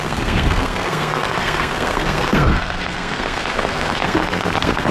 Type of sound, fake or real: fake